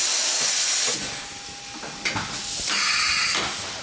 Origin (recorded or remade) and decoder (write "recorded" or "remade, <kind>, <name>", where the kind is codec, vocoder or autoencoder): recorded